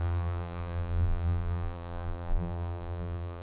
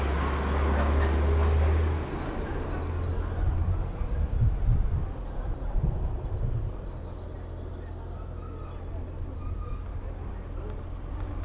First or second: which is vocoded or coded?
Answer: first